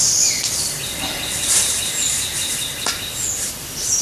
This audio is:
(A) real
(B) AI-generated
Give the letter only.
A